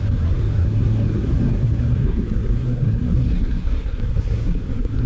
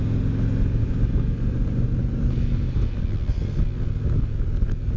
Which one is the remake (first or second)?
first